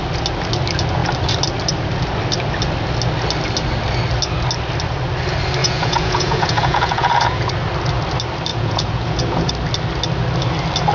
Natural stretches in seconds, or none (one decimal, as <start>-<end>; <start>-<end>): 0.0-5.6; 7.5-8.5; 9.5-10.9